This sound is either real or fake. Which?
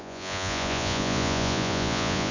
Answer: fake